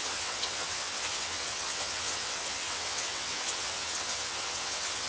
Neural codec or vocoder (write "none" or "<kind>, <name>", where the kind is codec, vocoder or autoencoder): vocoder, WaveNeXt